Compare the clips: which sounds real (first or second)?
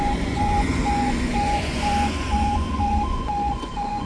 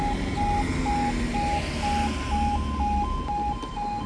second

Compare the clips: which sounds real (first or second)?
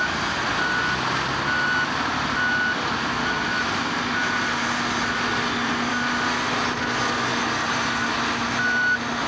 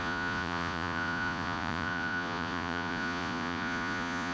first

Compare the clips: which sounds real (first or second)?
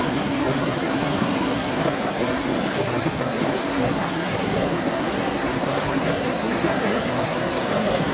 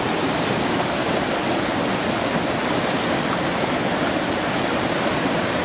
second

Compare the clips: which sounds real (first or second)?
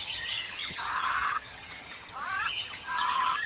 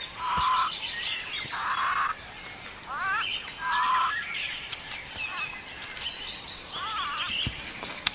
second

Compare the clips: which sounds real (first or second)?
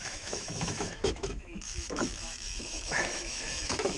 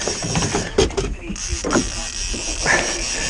second